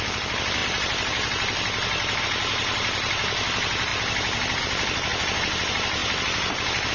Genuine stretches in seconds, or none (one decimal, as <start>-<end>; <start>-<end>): 0.0-6.9